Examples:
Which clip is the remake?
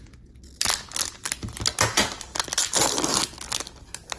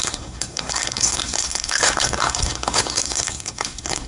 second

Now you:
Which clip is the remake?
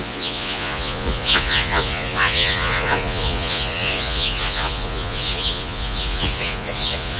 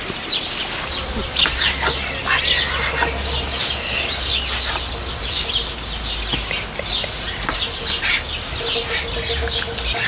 first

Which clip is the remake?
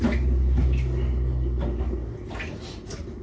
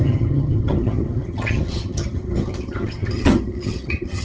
second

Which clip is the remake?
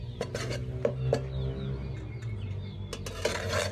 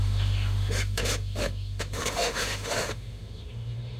second